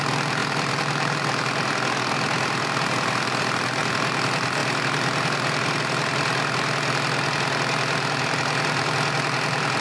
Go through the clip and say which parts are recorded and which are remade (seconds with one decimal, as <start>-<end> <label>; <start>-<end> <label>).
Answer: 0.0-0.4 recorded; 0.4-1.7 remade; 1.7-9.8 recorded